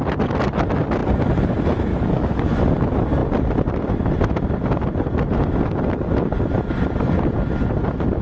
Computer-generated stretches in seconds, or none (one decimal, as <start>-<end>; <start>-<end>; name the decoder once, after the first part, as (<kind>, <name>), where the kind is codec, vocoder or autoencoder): 1.9-2.4 (codec, DAC)